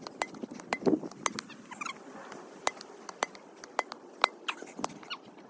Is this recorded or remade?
recorded